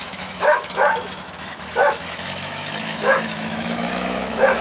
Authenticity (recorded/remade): remade